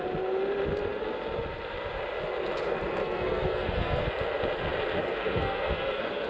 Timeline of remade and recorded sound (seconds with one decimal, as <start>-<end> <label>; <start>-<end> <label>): 0.0-3.0 recorded; 3.0-4.1 remade; 4.1-5.0 recorded; 5.0-6.3 remade